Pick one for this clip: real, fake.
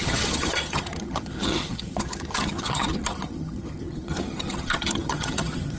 fake